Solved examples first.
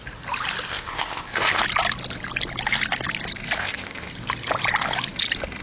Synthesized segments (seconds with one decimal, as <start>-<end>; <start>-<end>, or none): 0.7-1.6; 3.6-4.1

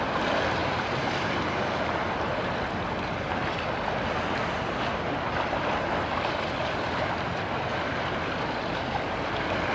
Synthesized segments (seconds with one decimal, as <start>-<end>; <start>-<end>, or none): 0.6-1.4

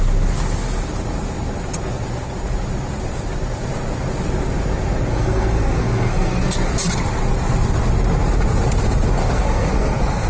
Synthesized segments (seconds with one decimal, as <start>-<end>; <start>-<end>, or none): 5.1-6.8; 9.2-10.3

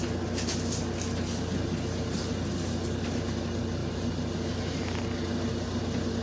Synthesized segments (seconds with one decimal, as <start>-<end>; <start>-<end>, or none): none